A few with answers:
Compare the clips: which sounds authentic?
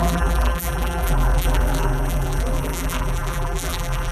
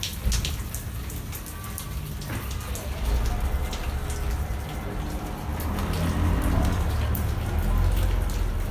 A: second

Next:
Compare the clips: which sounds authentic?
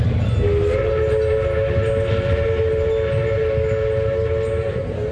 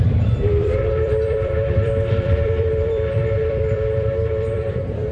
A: first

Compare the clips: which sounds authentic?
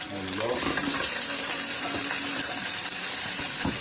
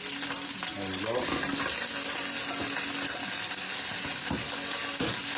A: second